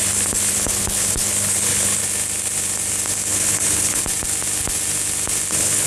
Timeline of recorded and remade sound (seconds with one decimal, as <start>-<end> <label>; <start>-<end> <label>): 0.0-2.0 remade; 2.0-3.3 recorded; 3.3-4.0 remade; 4.0-5.5 recorded; 5.5-5.9 remade